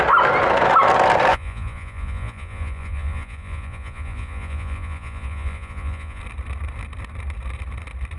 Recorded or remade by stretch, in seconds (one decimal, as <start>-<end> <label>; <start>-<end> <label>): 0.0-1.3 recorded; 1.3-6.2 remade; 6.2-8.2 recorded

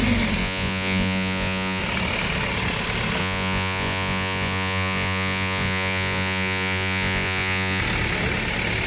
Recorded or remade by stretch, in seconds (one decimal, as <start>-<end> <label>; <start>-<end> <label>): 0.0-0.4 recorded; 0.4-1.8 remade; 1.8-3.2 recorded; 3.2-7.8 remade; 7.8-8.9 recorded

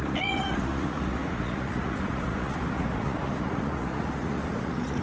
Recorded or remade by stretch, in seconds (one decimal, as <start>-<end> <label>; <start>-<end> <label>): 0.0-5.0 remade

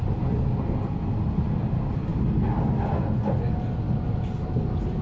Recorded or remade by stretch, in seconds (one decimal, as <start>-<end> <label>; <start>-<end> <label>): 0.0-5.0 recorded

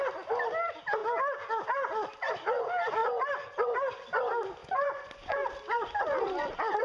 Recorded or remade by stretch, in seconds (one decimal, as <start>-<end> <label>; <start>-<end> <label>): 0.0-4.6 recorded; 4.6-5.5 remade; 5.5-6.8 recorded

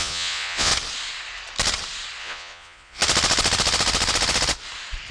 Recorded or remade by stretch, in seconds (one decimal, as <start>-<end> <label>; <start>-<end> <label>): 0.0-0.7 remade; 0.7-2.2 recorded; 2.2-3.0 remade; 3.0-5.1 recorded